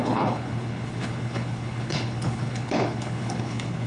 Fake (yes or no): yes